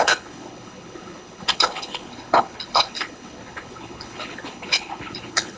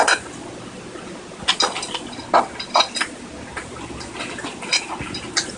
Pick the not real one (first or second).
first